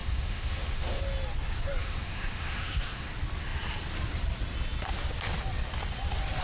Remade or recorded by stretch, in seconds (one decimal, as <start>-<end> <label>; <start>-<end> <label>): 0.0-1.0 remade; 1.0-1.8 recorded; 1.8-3.1 remade; 3.1-6.4 recorded

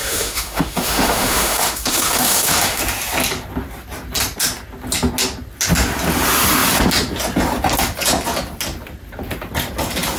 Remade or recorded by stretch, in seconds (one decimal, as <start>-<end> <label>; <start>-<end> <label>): 0.0-2.8 remade; 2.8-10.2 recorded

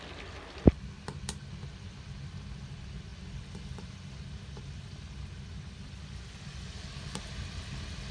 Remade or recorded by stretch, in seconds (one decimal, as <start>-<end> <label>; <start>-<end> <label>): 0.0-8.1 recorded

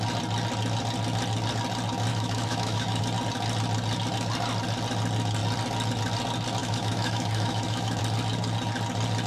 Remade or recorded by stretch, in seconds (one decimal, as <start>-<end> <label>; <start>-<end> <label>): 0.0-2.1 recorded; 2.1-3.0 remade; 3.0-6.6 recorded; 6.6-8.0 remade; 8.0-9.3 recorded

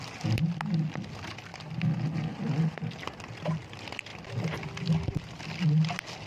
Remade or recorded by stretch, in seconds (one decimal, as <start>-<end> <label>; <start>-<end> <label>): 0.0-6.3 recorded

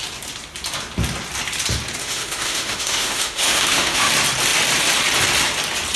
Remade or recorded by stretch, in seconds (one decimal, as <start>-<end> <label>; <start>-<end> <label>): 0.0-2.0 recorded; 2.0-4.1 remade; 4.1-6.0 recorded

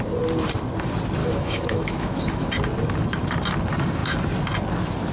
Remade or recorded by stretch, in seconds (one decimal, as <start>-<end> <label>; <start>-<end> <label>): 0.0-1.2 recorded; 1.2-2.5 remade; 2.5-5.1 recorded

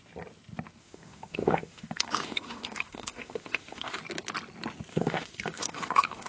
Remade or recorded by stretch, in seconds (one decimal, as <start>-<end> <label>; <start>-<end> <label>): 0.0-0.8 recorded; 0.8-4.0 remade; 4.0-4.9 recorded; 4.9-6.3 remade